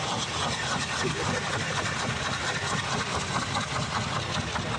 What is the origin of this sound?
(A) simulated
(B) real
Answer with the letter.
B